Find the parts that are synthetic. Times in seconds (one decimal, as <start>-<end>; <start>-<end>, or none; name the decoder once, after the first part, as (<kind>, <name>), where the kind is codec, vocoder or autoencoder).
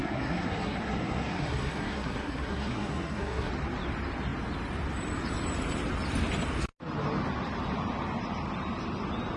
0.0-3.5 (codec, SNAC)